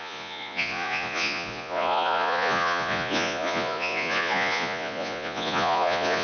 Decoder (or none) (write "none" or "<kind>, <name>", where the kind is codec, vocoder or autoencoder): vocoder, Vocos